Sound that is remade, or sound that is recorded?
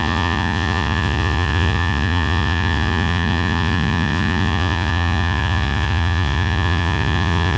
remade